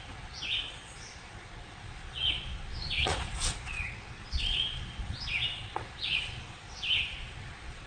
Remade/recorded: remade